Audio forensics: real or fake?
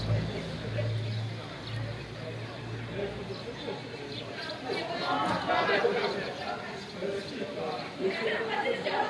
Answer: real